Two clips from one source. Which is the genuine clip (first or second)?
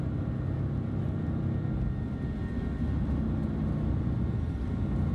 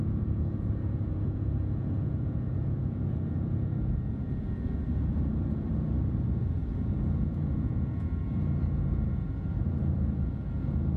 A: first